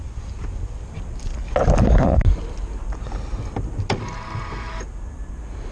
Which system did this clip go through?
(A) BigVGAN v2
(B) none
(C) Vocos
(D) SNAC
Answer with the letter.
B